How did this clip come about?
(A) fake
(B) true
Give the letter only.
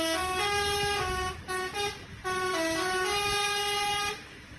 B